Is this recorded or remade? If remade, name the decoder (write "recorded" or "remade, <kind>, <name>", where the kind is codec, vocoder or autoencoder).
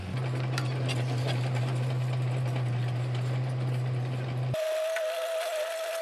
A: recorded